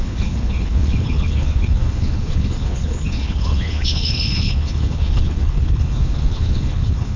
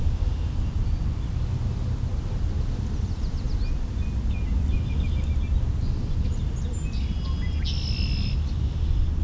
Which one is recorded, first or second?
second